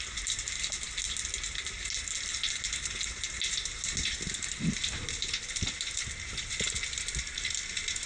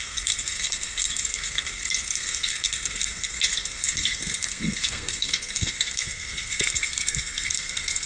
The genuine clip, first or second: first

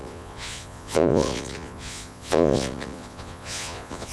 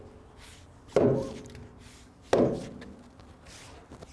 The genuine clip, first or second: second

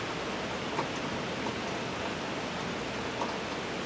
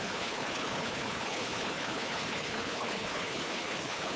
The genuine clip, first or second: first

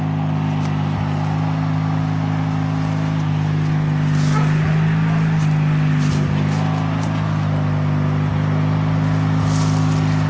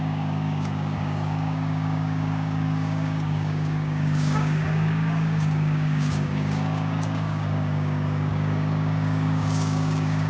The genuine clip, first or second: first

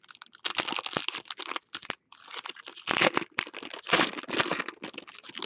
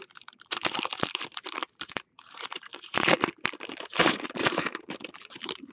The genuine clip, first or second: first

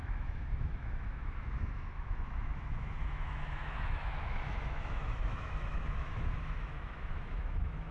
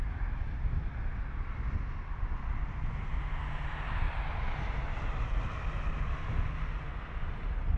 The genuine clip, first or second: second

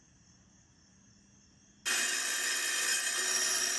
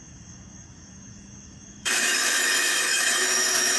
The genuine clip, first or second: first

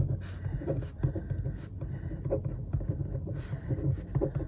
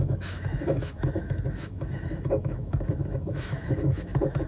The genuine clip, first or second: first